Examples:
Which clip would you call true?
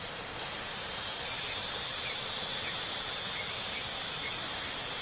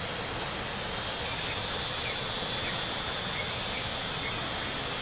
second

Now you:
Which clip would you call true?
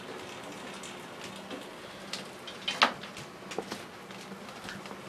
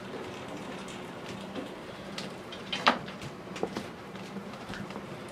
first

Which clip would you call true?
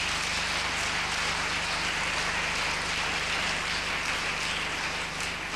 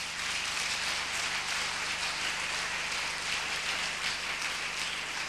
first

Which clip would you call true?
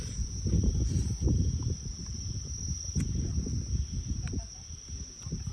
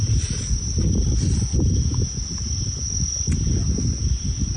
second